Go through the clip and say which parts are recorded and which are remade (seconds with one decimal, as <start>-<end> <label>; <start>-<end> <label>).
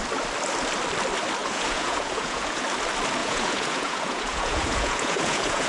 0.0-1.4 recorded; 1.4-2.6 remade; 2.6-3.2 recorded; 3.2-5.7 remade